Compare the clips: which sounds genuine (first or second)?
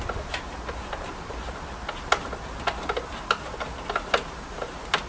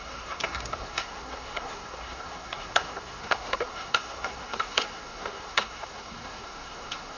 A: first